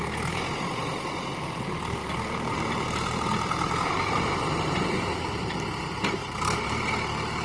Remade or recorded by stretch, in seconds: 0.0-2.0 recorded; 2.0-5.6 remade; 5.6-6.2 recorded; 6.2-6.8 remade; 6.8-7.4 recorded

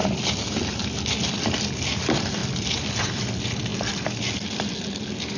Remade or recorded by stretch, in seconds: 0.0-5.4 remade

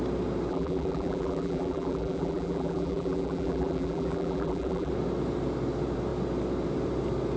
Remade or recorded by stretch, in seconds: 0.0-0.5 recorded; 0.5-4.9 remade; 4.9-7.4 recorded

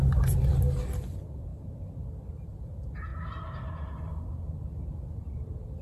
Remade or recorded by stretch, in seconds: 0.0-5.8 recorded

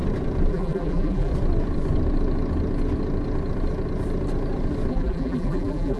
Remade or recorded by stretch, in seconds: 0.0-0.5 recorded; 0.5-1.3 remade; 1.3-4.9 recorded; 4.9-6.0 remade